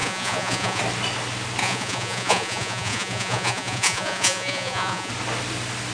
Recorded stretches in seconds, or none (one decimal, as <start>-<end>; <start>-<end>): 0.8-1.6; 5.1-5.9